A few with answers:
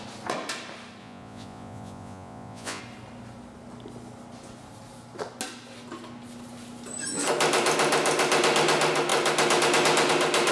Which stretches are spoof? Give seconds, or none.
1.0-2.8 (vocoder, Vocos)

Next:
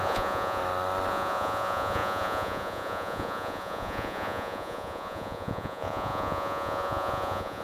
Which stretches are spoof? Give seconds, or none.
0.0-0.6 (vocoder, Vocos); 1.1-7.6

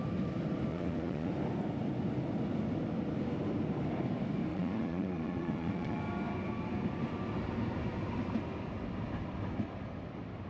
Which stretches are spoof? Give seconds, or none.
0.7-1.3 (vocoder, Vocos); 4.5-6.0

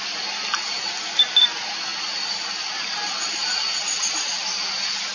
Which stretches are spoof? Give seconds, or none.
none